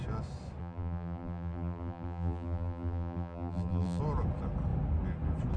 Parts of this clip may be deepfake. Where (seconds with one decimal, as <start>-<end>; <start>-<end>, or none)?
0.6-4.0